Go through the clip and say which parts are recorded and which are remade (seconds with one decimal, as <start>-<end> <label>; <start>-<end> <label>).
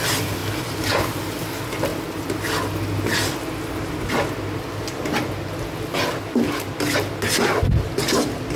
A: 0.0-8.6 recorded